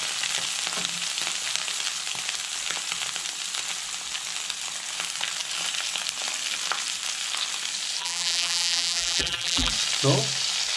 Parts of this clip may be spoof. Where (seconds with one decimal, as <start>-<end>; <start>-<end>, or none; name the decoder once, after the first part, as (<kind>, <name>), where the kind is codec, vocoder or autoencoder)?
8.0-9.7 (vocoder, BigVGAN v2)